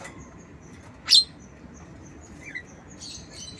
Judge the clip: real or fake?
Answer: real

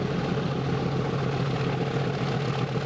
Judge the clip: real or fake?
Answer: real